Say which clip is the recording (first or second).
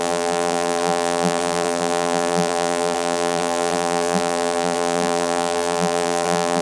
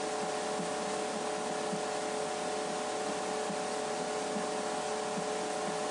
second